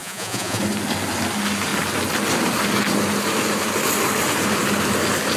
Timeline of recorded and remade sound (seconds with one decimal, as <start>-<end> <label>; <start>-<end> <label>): 0.0-0.6 remade; 0.6-5.4 recorded

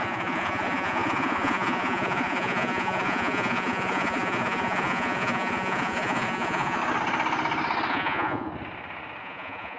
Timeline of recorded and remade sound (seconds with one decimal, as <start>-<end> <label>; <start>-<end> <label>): 0.0-6.8 remade; 6.8-7.9 recorded; 7.9-8.5 remade; 8.5-9.2 recorded; 9.2-9.8 remade

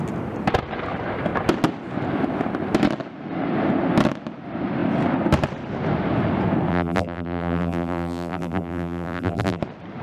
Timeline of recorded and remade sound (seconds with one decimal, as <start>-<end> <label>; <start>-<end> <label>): 0.0-6.7 recorded; 6.7-9.6 remade; 9.6-10.0 recorded

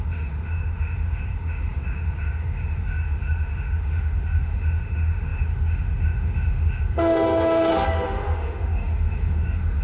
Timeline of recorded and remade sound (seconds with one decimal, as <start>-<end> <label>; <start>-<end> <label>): 0.0-9.8 remade